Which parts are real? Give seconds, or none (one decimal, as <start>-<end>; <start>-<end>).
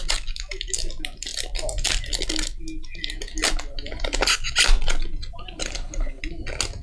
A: 0.0-5.6; 6.2-6.8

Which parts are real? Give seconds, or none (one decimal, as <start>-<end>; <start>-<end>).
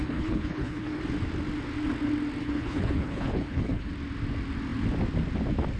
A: 1.0-2.4; 3.9-5.8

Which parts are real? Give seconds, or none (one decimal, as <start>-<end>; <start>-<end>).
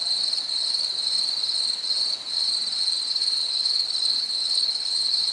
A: 0.0-3.4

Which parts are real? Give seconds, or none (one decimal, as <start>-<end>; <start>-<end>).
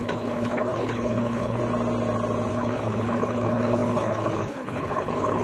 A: 1.6-2.5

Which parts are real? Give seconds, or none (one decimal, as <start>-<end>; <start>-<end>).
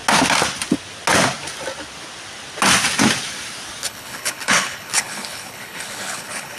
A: 0.0-3.8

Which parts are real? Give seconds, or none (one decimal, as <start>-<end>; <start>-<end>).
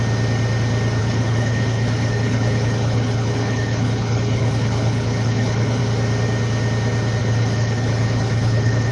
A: 0.0-1.0; 5.8-7.2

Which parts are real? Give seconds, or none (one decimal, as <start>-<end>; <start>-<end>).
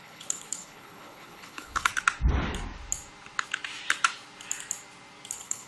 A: 1.9-5.3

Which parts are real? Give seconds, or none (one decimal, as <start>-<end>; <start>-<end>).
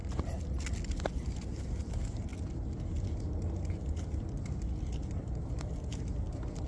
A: 0.0-6.7